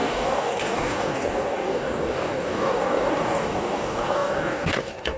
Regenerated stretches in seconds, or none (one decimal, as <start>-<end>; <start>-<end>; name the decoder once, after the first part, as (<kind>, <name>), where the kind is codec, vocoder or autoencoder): 0.0-5.2 (codec, DAC)